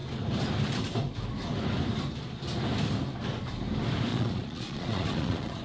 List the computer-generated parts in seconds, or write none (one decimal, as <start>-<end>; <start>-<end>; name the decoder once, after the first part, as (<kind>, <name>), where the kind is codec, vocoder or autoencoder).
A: 4.1-5.6 (vocoder, Vocos)